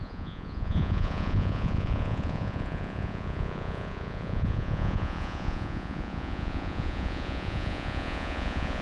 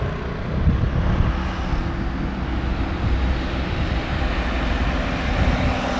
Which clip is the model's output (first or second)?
first